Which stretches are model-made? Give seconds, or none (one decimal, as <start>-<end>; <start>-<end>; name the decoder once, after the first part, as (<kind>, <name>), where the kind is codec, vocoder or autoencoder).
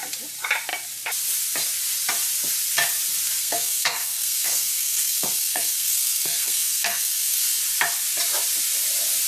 3.4-7.6 (codec, SNAC)